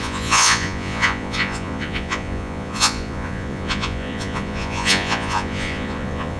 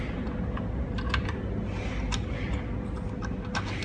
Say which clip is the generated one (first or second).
first